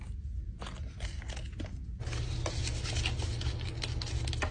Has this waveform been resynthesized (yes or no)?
no